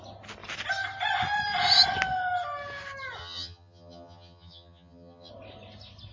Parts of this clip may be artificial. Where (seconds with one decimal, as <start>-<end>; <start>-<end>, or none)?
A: 3.2-5.3